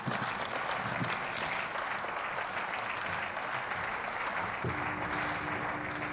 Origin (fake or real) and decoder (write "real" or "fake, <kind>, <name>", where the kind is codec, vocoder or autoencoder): real